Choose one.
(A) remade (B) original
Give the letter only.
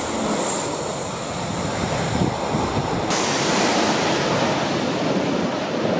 B